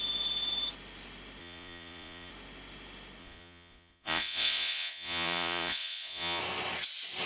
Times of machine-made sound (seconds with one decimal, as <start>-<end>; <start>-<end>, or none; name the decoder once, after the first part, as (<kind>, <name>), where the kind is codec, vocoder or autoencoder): 1.4-2.3 (vocoder, Vocos); 3.2-6.4